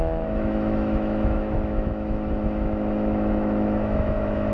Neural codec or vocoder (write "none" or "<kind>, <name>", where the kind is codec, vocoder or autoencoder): autoencoder, DAC-VAE